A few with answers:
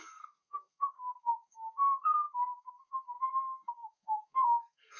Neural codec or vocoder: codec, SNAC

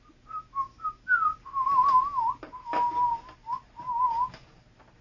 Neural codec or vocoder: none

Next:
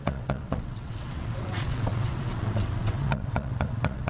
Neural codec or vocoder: vocoder, WaveNeXt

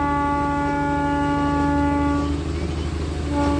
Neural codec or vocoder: none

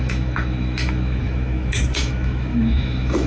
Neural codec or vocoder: autoencoder, DAC-VAE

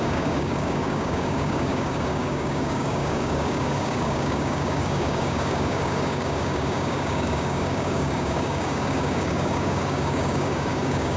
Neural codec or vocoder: codec, DAC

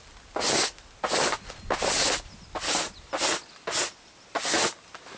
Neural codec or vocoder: none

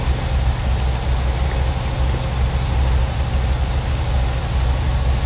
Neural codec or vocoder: none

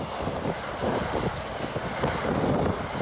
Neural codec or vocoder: none